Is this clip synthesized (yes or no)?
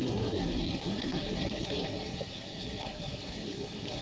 yes